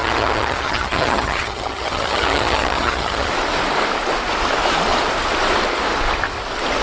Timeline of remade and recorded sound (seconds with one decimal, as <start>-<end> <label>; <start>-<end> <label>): 0.0-3.3 remade; 3.3-6.8 recorded